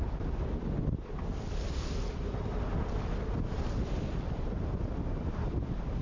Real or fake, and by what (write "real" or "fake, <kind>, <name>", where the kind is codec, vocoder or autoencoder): real